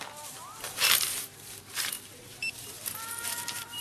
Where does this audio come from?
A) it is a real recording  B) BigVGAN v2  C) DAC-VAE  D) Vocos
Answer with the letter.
B